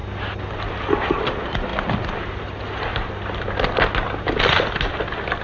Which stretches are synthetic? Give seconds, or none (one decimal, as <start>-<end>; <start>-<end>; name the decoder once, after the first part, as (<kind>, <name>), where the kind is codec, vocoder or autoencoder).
none